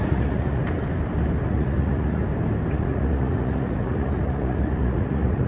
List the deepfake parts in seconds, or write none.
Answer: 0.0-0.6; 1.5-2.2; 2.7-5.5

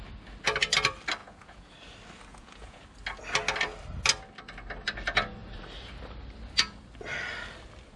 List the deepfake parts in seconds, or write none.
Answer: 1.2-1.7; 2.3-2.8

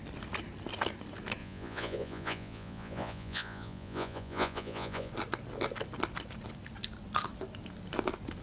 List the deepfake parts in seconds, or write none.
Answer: 1.4-5.1